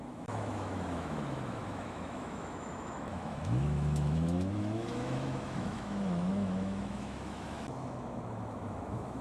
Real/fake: fake